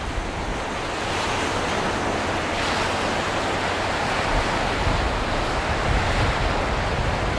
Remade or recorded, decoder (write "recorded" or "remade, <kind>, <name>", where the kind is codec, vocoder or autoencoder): recorded